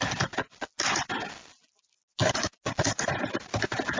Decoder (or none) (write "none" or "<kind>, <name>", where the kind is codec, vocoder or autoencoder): none